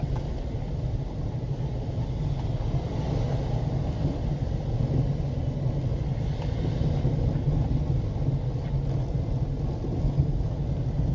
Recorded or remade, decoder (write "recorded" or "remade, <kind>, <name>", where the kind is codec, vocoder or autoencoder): recorded